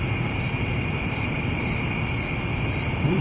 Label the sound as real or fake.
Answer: fake